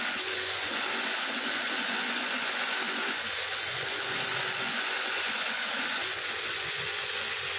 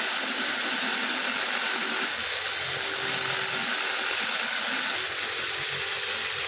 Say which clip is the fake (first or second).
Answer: first